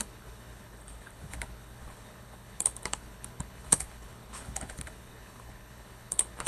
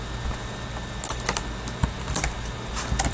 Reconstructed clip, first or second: first